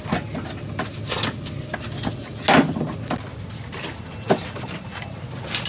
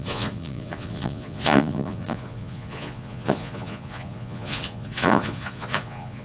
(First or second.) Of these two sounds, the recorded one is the first